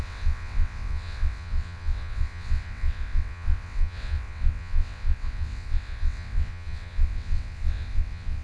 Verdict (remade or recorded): remade